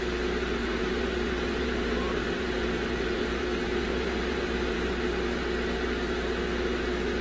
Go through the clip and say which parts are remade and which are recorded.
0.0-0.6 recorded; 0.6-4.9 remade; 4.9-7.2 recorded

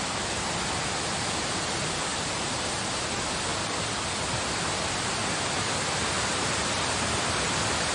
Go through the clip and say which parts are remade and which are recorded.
0.0-2.1 recorded; 2.1-2.8 remade; 2.8-7.9 recorded

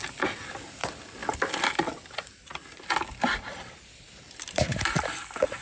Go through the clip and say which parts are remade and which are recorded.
0.0-2.5 recorded; 2.5-5.0 remade; 5.0-5.6 recorded

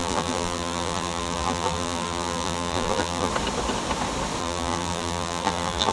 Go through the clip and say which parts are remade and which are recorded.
0.0-3.3 remade; 3.3-4.4 recorded; 4.4-5.9 remade

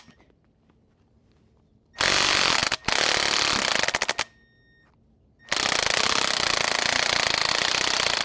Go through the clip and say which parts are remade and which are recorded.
0.0-2.6 remade; 2.6-7.5 recorded; 7.5-8.2 remade